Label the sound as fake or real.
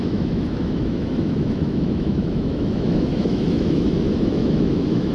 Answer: fake